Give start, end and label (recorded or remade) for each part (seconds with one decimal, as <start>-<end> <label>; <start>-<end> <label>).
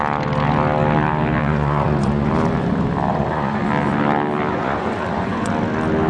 0.0-1.4 recorded; 1.4-2.3 remade; 2.3-3.1 recorded; 3.1-3.6 remade; 3.6-4.5 recorded; 4.5-5.5 remade; 5.5-6.1 recorded